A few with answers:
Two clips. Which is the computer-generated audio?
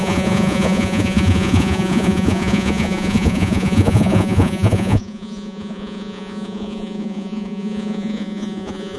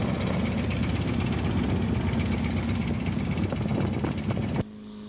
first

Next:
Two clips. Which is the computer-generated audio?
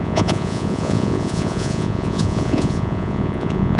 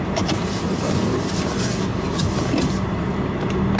first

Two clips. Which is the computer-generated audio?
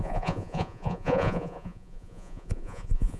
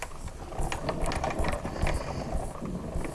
first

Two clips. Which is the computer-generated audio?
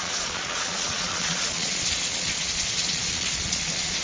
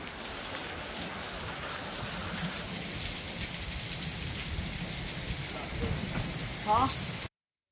first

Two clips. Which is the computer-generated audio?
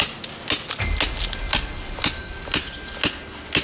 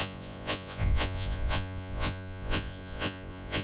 second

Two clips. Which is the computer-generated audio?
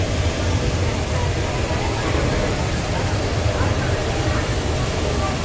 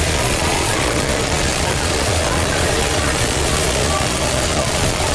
second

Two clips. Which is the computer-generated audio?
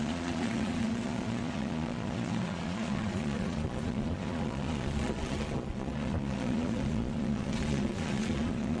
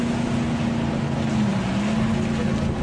first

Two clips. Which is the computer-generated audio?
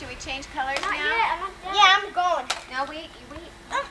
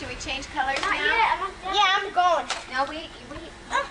second